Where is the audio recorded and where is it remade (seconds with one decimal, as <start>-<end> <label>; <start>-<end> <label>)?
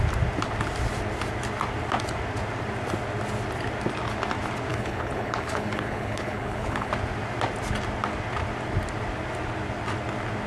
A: 0.0-4.7 recorded; 4.7-6.9 remade; 6.9-10.5 recorded